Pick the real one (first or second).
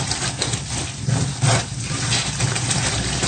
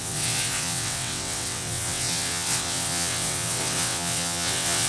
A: first